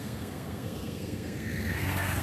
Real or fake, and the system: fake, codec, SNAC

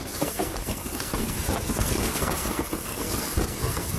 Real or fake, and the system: fake, codec, SNAC